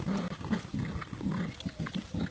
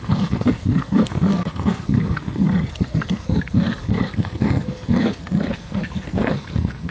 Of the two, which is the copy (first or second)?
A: second